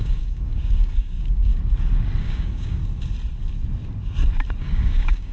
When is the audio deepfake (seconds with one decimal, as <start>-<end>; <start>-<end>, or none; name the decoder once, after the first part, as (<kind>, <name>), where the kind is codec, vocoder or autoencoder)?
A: 0.0-1.5 (codec, DAC); 2.2-2.8; 4.6-5.3